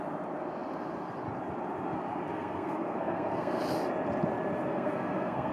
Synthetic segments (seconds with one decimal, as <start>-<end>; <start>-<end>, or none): 2.3-3.6; 4.7-5.5